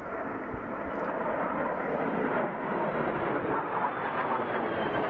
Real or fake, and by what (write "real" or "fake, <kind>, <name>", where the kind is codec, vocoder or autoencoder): real